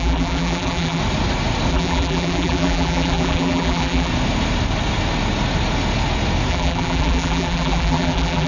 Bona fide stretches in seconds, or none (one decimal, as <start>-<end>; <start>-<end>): 1.0-1.7; 4.1-6.5